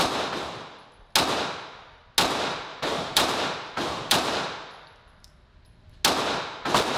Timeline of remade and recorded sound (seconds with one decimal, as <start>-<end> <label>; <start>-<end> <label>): 0.0-2.7 recorded; 2.7-5.9 remade; 5.9-7.0 recorded